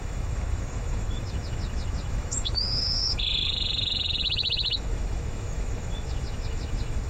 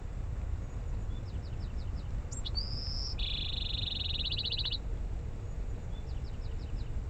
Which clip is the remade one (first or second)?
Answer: first